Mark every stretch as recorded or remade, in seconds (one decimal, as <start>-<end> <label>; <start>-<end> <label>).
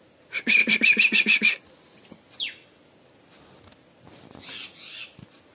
0.0-5.5 recorded